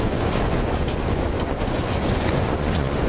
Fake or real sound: fake